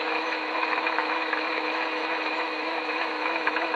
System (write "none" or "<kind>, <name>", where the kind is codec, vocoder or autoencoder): autoencoder, DAC-VAE